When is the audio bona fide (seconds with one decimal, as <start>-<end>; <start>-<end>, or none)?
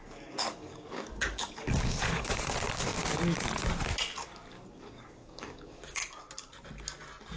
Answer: 3.0-4.7; 6.0-7.4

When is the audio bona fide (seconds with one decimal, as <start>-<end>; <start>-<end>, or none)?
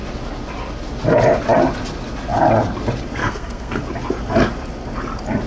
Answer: 0.0-3.2; 3.8-5.5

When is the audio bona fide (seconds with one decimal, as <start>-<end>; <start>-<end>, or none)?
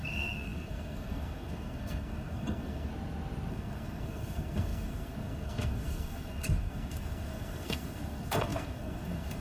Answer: 2.9-3.5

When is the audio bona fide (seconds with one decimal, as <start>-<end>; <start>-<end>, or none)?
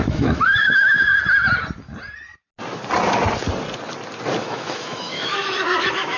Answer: 1.1-4.4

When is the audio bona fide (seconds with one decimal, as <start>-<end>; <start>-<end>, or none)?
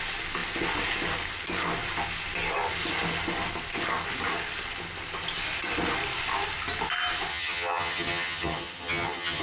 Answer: 0.0-7.3